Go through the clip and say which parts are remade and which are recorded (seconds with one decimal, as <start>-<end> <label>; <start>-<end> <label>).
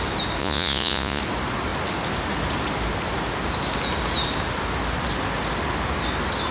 0.0-0.4 recorded; 0.4-1.2 remade; 1.2-6.5 recorded